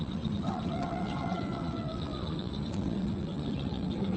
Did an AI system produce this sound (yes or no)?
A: yes